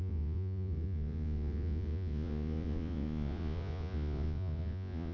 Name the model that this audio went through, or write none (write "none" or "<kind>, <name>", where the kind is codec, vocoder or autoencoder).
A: vocoder, Vocos